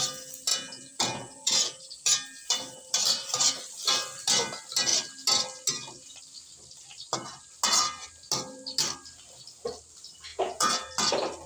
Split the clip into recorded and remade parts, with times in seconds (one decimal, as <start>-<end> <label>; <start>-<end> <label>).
0.0-0.5 recorded; 0.5-2.0 remade; 2.0-10.3 recorded; 10.3-10.9 remade; 10.9-11.5 recorded